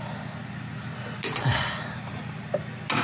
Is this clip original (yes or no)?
yes